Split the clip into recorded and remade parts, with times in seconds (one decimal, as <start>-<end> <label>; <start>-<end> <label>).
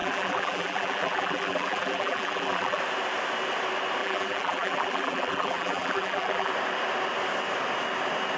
0.0-2.8 remade; 2.8-4.0 recorded; 4.0-6.5 remade; 6.5-8.4 recorded